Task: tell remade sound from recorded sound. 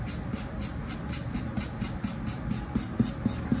recorded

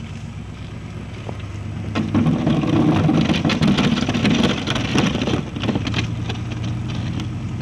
recorded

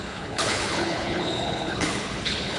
remade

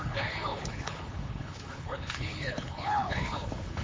remade